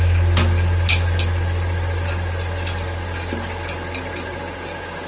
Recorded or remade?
recorded